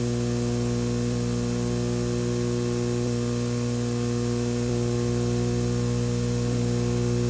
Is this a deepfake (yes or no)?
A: no